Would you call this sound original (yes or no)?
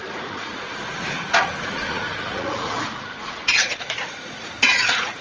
no